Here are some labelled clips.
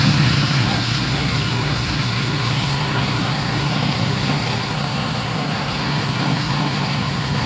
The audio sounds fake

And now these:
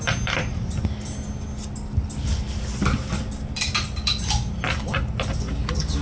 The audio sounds real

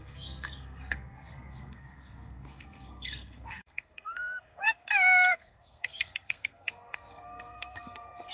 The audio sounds fake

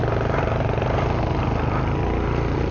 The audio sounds real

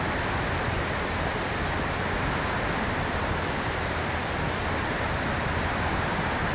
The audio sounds real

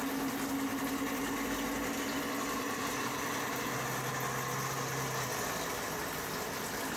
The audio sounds real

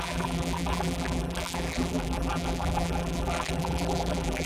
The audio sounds fake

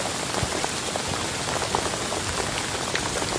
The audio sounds real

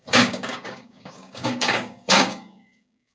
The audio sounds fake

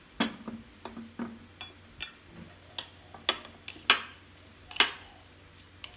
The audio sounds real